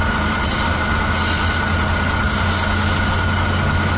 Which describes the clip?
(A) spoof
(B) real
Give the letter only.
B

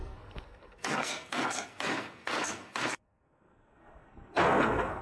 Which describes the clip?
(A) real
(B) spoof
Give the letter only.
B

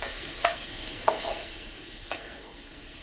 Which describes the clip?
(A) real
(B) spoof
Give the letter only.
B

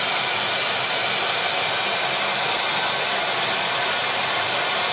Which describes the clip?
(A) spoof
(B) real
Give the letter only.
B